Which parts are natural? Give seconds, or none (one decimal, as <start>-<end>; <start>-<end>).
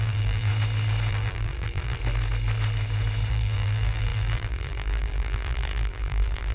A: 0.5-1.1; 2.0-3.3